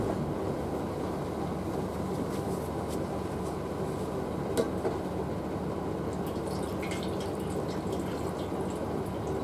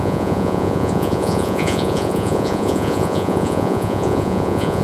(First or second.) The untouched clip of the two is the first